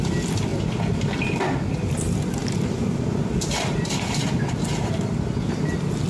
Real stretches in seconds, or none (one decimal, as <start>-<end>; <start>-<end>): 0.0-0.5; 1.4-2.4; 4.9-6.1